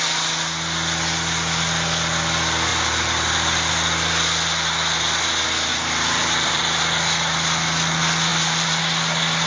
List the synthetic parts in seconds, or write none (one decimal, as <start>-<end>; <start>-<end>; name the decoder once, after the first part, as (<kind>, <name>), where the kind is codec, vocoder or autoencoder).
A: 2.7-3.7 (vocoder, BigVGAN v2); 5.7-6.6; 8.3-8.8